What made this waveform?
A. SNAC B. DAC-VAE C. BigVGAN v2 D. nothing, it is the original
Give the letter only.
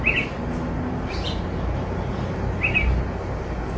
D